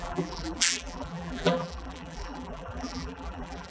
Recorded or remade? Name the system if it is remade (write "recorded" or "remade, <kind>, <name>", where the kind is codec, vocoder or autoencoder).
remade, vocoder, BigVGAN v2